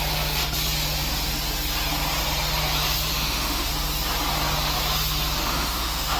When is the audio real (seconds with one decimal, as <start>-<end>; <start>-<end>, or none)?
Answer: 0.0-3.1; 3.7-5.4